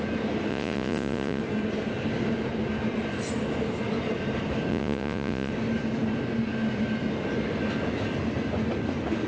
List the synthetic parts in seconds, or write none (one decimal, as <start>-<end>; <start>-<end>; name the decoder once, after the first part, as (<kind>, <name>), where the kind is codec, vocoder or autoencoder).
0.5-1.4 (vocoder, Vocos); 4.7-5.5